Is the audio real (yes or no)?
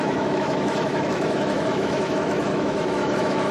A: no